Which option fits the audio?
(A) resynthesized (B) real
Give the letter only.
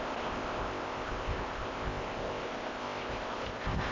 A